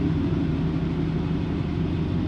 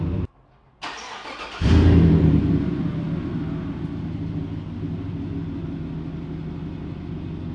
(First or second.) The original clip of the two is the second